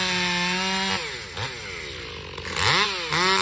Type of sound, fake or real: real